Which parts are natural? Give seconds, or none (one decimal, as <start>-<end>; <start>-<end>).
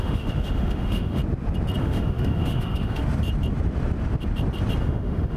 1.2-1.8; 3.0-4.8